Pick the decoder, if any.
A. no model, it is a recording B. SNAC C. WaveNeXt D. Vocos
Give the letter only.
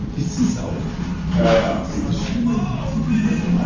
A